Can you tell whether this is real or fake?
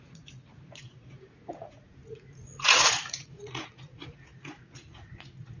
fake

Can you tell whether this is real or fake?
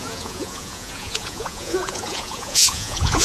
fake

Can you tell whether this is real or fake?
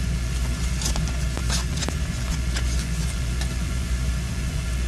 fake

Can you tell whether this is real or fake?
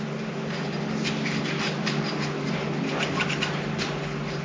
real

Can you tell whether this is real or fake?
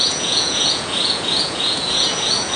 fake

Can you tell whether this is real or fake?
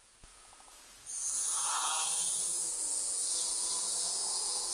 fake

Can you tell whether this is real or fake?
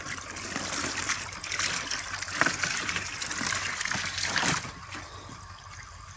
real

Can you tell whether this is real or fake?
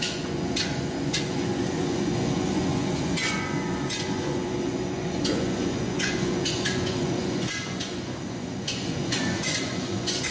fake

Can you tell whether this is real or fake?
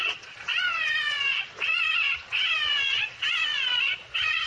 fake